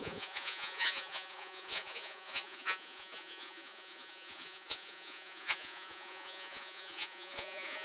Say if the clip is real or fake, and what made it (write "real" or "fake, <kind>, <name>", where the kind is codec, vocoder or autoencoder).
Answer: fake, vocoder, Vocos